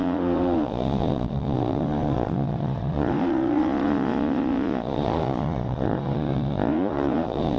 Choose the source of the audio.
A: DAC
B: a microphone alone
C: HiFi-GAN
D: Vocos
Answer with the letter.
D